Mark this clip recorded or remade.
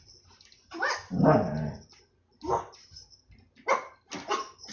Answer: recorded